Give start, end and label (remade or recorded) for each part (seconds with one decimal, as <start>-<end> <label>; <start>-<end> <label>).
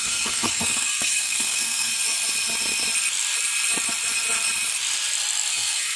0.0-1.9 remade; 1.9-5.5 recorded; 5.5-6.0 remade